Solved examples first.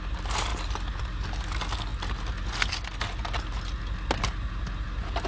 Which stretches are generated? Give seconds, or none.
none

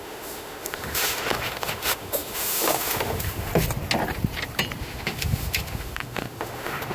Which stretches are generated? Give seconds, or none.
0.0-3.5; 4.8-6.9